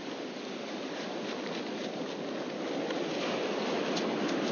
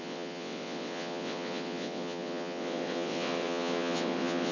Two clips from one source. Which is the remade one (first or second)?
second